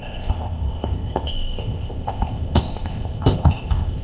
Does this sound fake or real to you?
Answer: fake